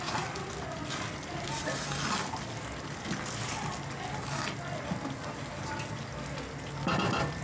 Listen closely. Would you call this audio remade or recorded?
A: recorded